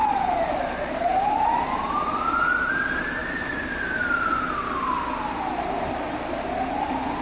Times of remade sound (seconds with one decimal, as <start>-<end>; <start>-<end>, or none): none